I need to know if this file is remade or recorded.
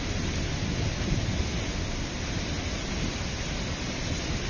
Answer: recorded